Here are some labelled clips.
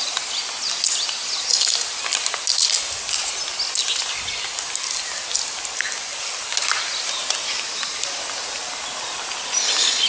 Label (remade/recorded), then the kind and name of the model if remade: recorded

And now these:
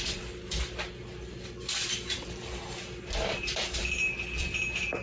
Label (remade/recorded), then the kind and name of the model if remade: recorded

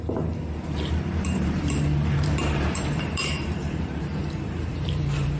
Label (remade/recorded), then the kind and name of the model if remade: remade, vocoder, BigVGAN v2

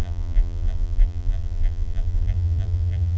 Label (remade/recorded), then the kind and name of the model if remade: remade, vocoder, BigVGAN v2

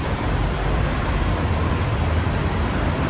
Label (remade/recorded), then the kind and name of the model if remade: remade, vocoder, BigVGAN v2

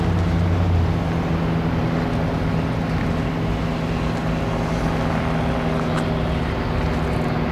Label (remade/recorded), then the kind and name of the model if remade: recorded